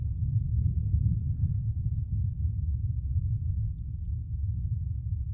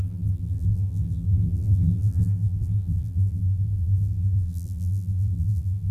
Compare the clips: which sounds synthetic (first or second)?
second